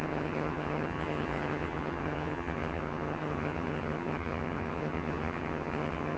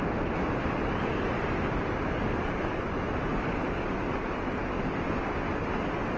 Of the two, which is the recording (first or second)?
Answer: second